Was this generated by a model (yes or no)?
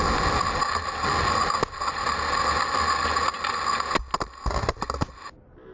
no